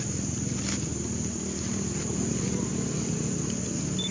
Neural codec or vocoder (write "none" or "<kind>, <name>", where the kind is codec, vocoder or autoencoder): none